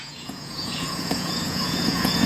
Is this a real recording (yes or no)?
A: no